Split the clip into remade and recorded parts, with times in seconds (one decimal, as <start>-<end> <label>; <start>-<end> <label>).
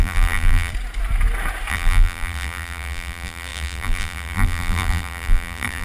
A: 0.0-0.7 remade; 0.7-1.7 recorded; 1.7-5.8 remade